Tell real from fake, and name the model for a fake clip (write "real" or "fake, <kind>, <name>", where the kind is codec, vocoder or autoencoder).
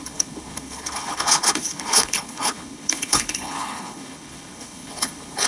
fake, codec, HILCodec